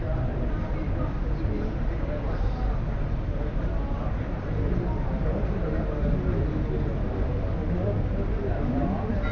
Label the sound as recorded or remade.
recorded